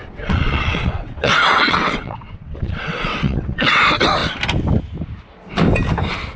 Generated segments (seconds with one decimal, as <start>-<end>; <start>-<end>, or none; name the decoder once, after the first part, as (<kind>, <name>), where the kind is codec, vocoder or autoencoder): 0.0-3.8 (vocoder, WaveNeXt)